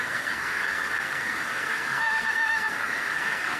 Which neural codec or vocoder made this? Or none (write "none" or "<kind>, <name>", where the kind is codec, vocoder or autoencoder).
codec, SNAC